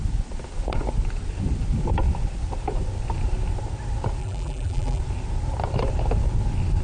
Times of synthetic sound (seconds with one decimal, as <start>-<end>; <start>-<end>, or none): 4.2-5.0